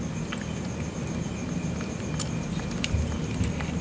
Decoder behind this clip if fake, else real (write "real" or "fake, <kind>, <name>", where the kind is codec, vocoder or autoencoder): real